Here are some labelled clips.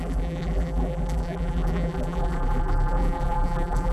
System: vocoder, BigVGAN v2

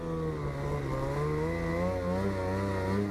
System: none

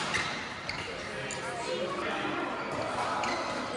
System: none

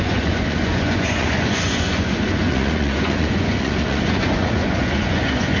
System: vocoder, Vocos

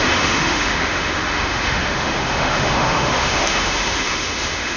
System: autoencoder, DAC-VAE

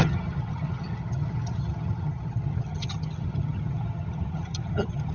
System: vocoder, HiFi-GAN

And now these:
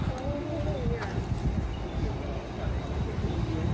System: none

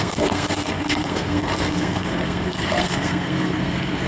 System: codec, SNAC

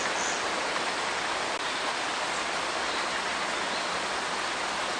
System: none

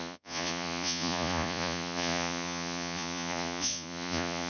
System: vocoder, Vocos